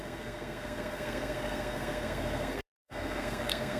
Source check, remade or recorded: remade